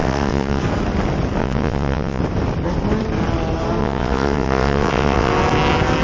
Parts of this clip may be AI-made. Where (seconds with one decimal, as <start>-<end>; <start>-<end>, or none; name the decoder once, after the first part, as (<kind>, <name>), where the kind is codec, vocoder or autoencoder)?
0.0-0.6 (vocoder, WaveNeXt); 1.4-2.2; 3.8-5.3